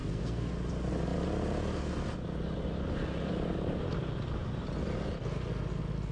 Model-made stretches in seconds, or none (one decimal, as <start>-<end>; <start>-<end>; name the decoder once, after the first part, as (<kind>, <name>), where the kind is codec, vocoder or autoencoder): 0.0-0.5 (codec, SNAC)